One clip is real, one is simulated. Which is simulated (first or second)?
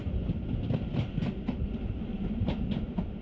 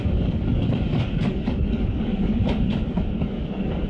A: second